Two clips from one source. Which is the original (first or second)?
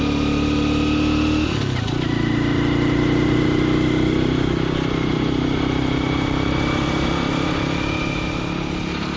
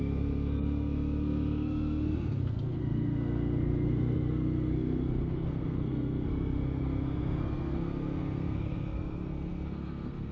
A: first